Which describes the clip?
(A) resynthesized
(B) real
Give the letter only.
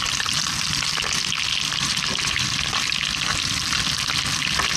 B